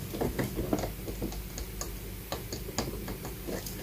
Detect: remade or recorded recorded